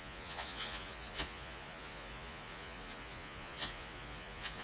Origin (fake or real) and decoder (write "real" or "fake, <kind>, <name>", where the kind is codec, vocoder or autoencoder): fake, vocoder, Vocos